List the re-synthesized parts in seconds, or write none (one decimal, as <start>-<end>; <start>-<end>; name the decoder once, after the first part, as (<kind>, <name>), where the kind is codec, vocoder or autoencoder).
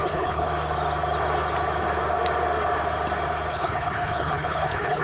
0.0-0.5 (codec, HILCodec); 3.5-5.0